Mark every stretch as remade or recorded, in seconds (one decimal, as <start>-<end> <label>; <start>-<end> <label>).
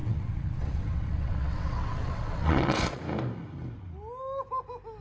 0.0-3.0 remade; 3.0-5.0 recorded